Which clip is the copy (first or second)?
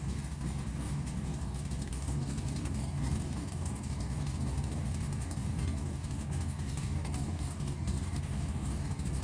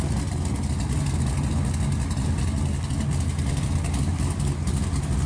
first